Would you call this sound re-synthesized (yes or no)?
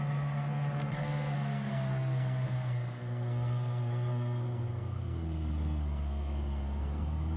yes